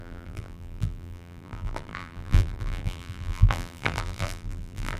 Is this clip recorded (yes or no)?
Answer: no